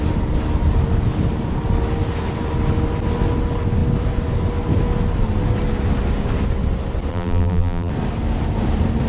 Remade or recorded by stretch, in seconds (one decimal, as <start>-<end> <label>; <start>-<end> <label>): 0.0-7.1 recorded; 7.1-7.9 remade; 7.9-9.1 recorded